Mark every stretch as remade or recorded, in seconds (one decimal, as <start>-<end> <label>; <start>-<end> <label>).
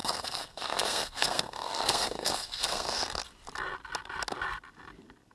0.0-3.2 remade; 3.2-5.3 recorded